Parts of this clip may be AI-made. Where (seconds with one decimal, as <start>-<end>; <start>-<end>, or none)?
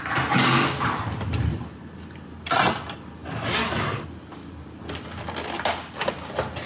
none